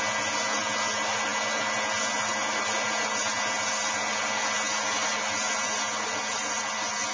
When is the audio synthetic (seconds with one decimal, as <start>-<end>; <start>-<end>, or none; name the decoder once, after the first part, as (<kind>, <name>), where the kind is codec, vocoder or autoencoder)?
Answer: none